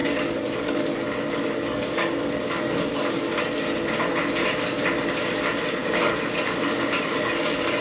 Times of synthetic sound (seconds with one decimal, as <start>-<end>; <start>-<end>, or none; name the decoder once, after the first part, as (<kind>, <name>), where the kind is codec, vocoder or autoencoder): 0.0-3.4 (codec, DAC); 5.8-7.8